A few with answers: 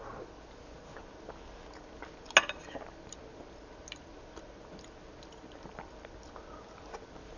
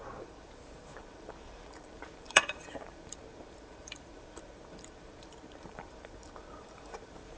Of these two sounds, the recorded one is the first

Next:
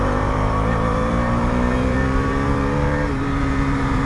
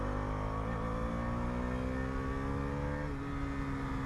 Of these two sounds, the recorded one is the second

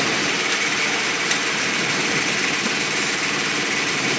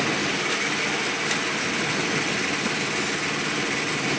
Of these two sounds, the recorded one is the second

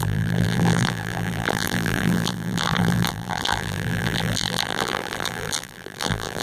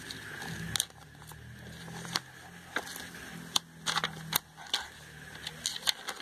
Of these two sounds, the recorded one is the second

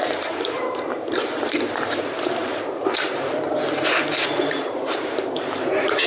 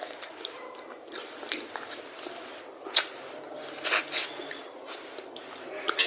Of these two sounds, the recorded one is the second